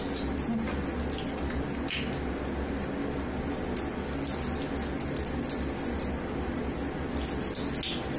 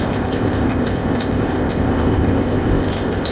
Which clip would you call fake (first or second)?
second